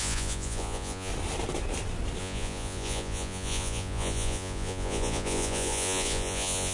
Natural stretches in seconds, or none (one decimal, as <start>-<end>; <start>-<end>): 1.1-2.2